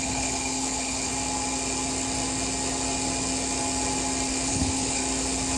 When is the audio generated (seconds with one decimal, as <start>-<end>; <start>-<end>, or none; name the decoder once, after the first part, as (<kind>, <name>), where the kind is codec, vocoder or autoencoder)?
0.0-1.1 (codec, HILCodec); 4.5-5.0